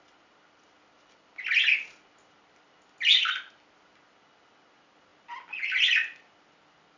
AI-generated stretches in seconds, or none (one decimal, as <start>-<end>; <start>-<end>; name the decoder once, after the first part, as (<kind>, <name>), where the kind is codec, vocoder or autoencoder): none

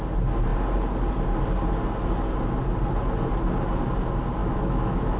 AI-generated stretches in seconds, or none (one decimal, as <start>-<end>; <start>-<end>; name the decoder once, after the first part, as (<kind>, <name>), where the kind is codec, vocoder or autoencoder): 4.4-5.2 (autoencoder, DAC-VAE)

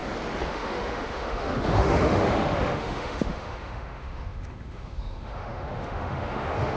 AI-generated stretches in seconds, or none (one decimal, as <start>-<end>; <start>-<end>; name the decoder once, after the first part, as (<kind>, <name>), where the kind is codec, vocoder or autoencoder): 0.5-6.8 (autoencoder, DAC-VAE)

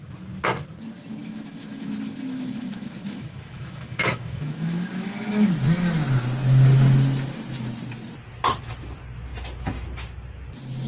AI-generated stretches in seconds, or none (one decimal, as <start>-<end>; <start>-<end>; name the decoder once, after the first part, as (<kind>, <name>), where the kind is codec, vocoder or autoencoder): 1.2-5.5 (autoencoder, DAC-VAE)

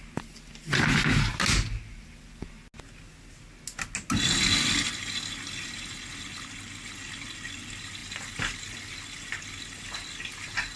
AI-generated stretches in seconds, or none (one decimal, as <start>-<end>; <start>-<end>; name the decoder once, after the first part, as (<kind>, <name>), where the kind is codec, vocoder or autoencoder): none